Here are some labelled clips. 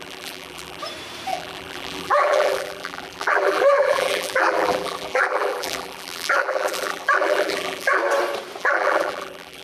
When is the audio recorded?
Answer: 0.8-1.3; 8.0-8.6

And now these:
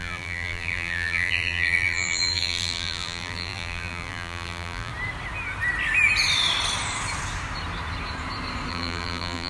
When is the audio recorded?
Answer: 4.9-8.7

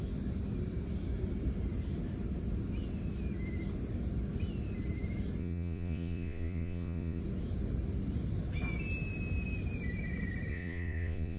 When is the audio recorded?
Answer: 0.0-5.4; 7.2-10.5

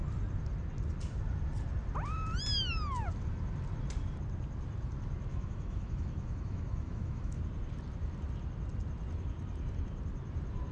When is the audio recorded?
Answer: 0.0-5.3; 7.4-10.7

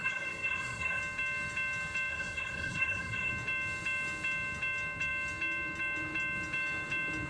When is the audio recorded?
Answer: 1.0-2.1; 3.3-7.3

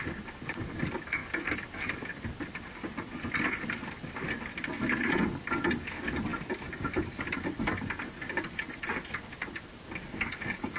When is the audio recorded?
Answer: 0.0-10.8

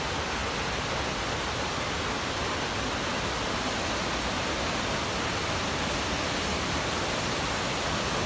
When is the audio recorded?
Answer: 0.0-8.3

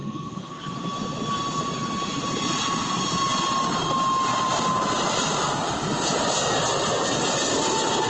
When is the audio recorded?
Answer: 0.6-8.1